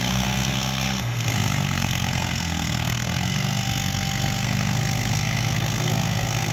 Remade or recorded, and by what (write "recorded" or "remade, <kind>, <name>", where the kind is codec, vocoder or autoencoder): remade, codec, SNAC